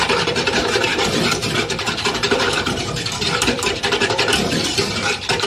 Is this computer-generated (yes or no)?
yes